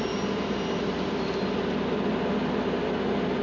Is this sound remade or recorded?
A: recorded